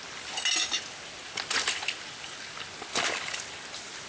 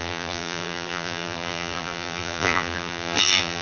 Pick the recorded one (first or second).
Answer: first